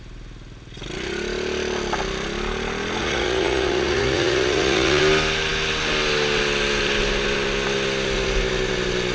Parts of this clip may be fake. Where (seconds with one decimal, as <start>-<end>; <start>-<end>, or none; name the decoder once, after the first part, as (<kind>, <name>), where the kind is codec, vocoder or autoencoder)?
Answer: 3.0-5.0 (vocoder, Vocos)